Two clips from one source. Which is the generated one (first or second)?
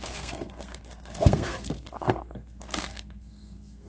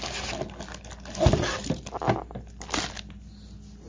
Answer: first